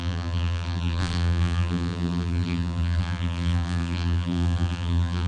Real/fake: fake